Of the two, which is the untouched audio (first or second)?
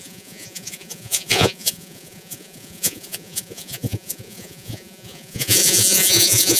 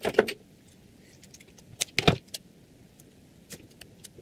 second